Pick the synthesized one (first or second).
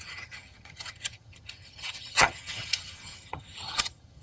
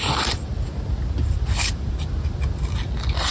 first